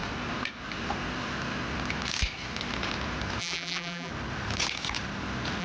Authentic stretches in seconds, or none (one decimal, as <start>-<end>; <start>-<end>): 0.0-3.4; 4.1-5.6